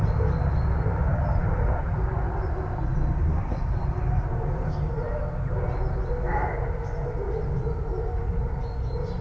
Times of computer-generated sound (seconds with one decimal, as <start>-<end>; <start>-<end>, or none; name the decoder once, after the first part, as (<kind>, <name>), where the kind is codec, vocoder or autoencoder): none